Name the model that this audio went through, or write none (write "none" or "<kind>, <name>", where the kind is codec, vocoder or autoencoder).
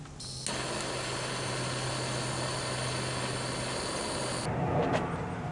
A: none